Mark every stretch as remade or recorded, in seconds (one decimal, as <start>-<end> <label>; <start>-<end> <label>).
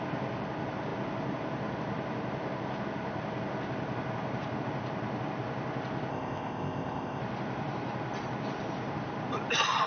0.0-6.1 recorded; 6.1-7.2 remade; 7.2-9.9 recorded